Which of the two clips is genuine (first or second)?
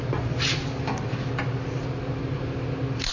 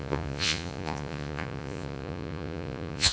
first